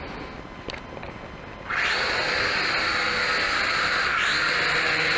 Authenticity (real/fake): real